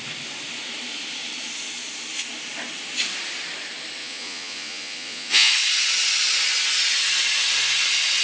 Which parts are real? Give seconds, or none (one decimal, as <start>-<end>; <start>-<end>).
0.0-4.0; 5.5-8.2

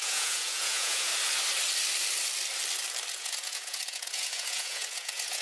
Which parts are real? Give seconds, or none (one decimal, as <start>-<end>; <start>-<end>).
1.1-3.1

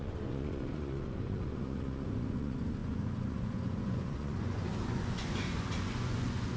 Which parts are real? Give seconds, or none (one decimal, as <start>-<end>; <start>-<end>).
none

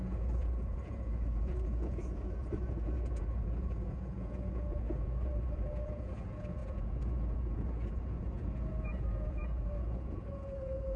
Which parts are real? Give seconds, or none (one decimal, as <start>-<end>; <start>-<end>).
none